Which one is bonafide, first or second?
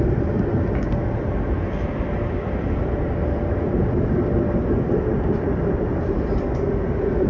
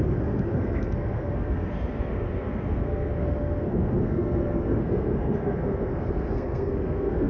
first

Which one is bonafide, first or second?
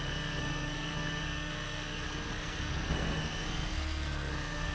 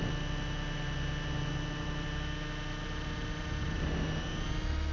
second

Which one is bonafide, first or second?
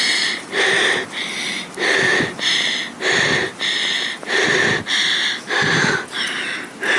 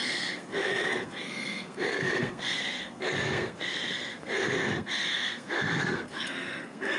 first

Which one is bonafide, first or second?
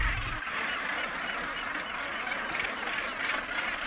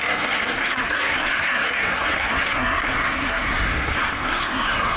first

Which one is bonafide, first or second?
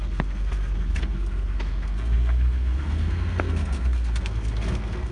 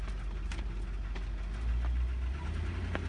second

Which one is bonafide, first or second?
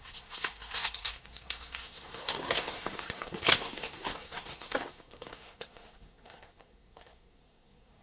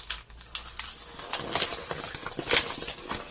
second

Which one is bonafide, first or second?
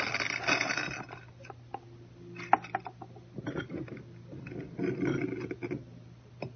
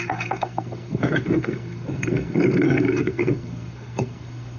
first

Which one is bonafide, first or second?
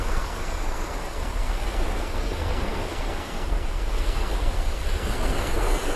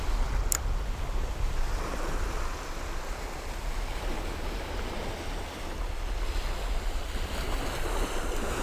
second